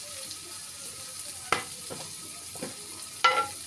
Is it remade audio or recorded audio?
recorded